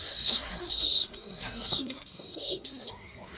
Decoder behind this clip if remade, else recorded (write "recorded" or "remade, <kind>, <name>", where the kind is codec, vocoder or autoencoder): remade, codec, SNAC